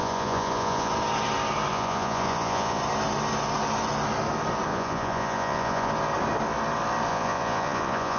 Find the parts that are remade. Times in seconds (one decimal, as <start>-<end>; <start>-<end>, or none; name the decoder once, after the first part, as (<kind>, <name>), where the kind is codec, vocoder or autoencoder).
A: 0.0-0.9 (vocoder, Vocos); 1.7-2.8; 4.7-5.9; 7.1-8.2